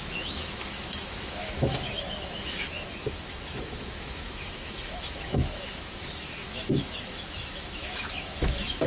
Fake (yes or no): yes